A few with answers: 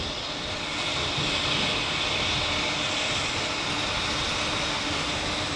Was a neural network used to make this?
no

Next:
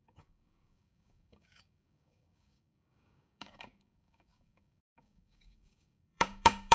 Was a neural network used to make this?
yes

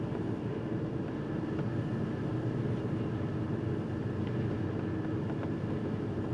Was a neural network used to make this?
no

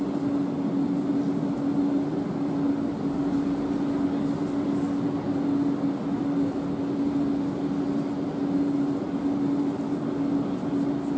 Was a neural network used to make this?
no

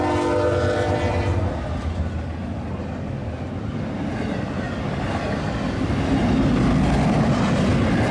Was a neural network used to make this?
no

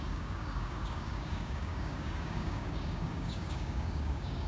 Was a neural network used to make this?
yes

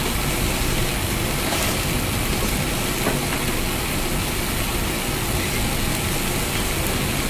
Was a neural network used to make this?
no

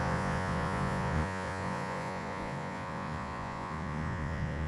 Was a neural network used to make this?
yes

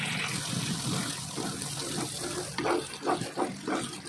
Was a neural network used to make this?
no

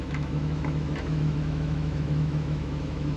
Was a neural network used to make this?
yes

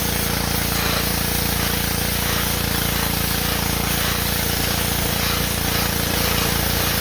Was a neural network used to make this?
no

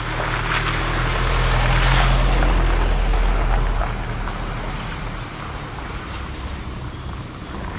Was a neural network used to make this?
no